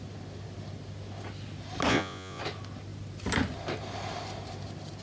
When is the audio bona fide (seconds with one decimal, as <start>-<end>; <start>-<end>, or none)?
0.0-1.9; 2.4-5.0

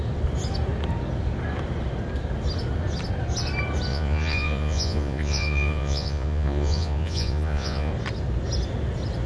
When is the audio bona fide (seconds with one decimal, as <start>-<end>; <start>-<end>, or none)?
0.0-3.9; 7.9-9.3

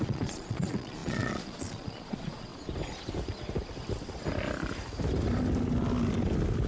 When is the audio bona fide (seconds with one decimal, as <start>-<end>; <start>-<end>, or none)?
2.5-6.7

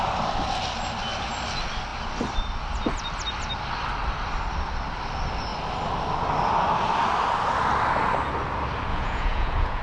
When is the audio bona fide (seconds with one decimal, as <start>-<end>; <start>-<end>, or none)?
0.0-8.9

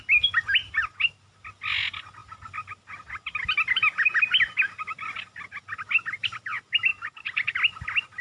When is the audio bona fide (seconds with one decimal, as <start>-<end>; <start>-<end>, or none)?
0.0-8.2

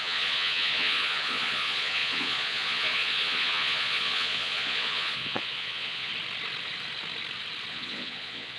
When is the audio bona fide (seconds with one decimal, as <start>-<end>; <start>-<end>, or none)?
6.1-7.7

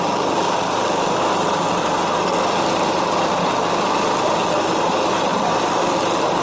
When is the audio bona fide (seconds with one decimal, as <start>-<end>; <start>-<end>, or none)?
0.0-6.4